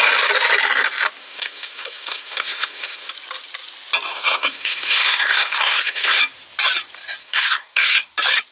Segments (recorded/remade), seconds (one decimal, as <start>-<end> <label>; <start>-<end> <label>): 0.0-1.2 recorded; 1.2-3.1 remade; 3.1-4.1 recorded; 4.1-6.2 remade; 6.2-7.2 recorded; 7.2-8.1 remade; 8.1-8.5 recorded